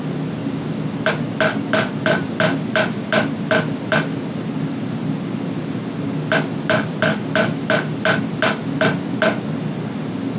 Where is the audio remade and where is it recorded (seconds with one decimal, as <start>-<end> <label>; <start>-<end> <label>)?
0.0-10.4 recorded